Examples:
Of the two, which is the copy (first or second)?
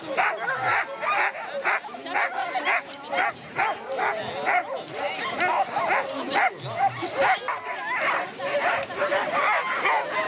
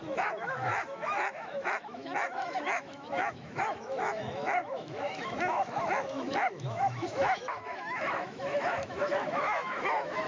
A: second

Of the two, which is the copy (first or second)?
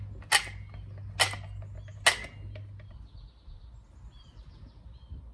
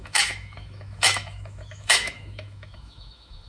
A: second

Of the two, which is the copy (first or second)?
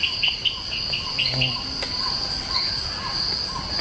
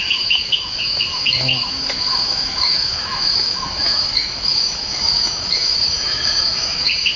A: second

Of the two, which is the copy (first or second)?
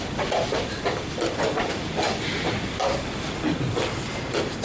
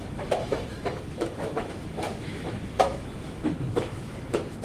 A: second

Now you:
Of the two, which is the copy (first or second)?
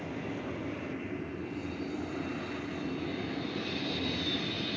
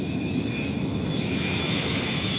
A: second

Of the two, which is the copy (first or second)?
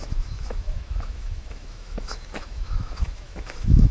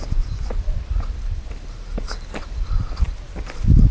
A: first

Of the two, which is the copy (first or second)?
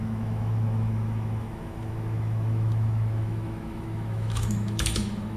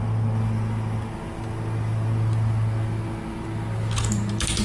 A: first